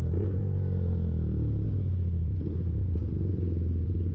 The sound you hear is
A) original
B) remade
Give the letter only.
A